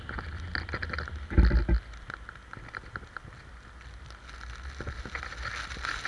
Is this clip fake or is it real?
real